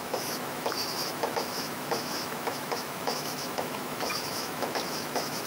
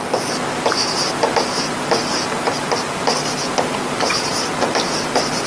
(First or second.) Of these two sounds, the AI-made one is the first